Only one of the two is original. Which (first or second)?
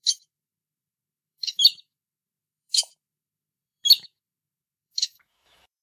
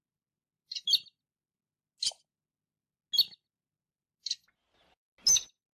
second